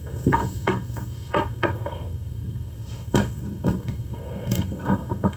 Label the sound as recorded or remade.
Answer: remade